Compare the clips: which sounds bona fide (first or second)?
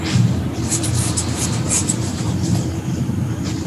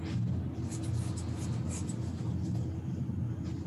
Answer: second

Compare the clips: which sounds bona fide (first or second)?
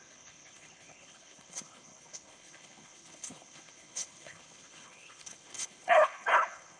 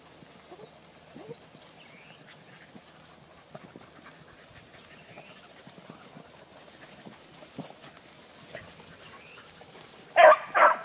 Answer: second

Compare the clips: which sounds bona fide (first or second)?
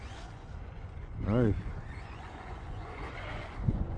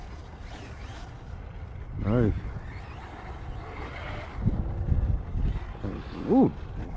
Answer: second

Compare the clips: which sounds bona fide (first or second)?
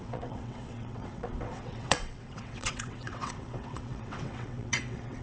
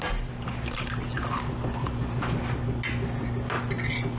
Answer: second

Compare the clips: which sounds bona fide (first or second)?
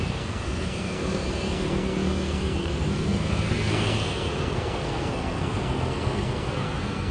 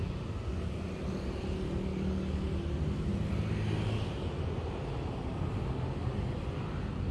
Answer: second